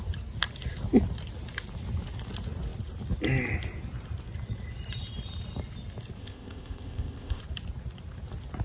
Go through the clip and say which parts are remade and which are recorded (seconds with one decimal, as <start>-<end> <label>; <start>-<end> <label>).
0.0-6.2 recorded; 6.2-7.4 remade; 7.4-8.6 recorded